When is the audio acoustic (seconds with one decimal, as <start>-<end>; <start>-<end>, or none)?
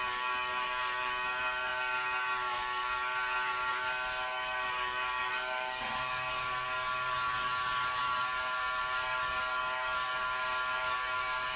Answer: none